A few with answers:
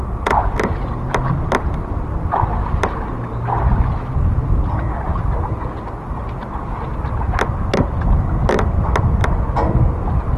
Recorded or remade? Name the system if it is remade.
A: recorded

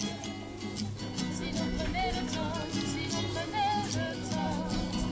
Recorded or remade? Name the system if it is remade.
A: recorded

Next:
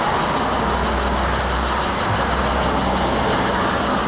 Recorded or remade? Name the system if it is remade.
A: recorded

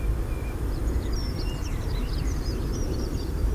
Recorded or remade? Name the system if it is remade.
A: remade, vocoder, BigVGAN v2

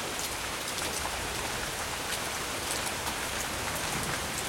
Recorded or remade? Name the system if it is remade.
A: remade, vocoder, BigVGAN v2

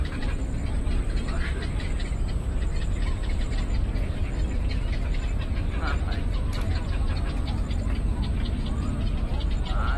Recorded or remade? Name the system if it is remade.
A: recorded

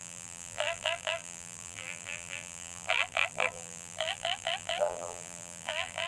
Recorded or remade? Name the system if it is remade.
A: remade, vocoder, BigVGAN v2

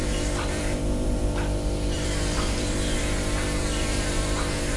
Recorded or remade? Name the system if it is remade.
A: remade, vocoder, BigVGAN v2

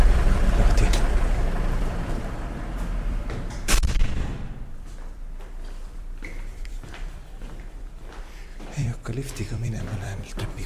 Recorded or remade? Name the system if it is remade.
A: remade, vocoder, BigVGAN v2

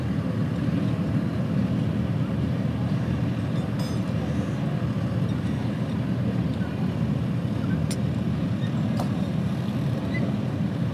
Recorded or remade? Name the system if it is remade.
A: recorded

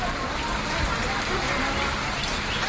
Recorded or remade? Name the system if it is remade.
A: recorded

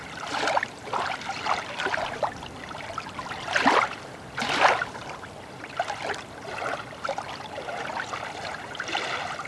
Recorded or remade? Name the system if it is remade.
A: remade, vocoder, BigVGAN v2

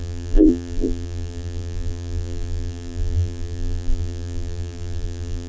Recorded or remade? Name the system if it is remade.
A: remade, vocoder, BigVGAN v2